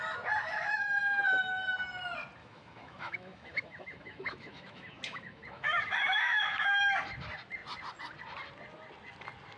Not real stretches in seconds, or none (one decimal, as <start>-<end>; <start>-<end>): 0.4-1.2; 2.4-6.8